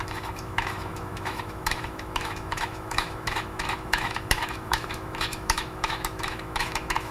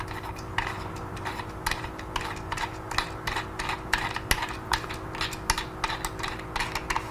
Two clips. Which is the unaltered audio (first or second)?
second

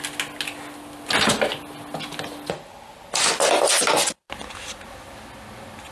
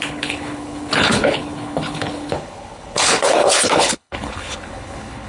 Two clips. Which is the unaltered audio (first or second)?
first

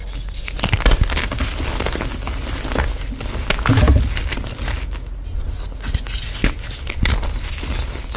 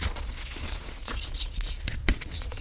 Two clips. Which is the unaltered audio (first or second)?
first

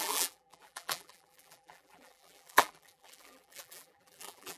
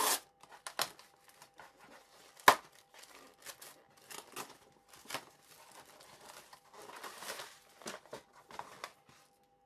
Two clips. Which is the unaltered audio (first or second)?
second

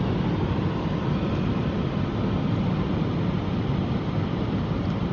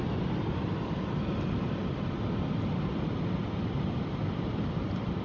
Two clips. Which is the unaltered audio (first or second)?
first